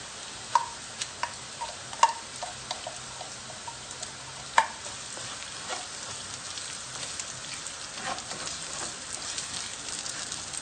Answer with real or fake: real